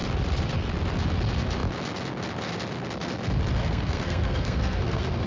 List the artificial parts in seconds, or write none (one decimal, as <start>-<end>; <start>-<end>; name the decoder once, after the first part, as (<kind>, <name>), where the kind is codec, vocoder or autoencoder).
3.6-5.3 (codec, SNAC)